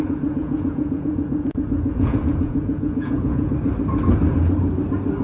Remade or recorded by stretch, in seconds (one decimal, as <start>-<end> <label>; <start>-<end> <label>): 0.0-0.4 recorded; 0.4-3.5 remade; 3.5-5.2 recorded